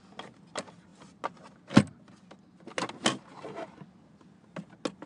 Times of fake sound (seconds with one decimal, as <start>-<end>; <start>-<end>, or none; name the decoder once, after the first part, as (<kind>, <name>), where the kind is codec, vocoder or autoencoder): none